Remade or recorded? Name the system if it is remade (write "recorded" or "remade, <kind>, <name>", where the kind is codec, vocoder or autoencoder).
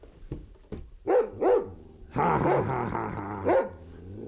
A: recorded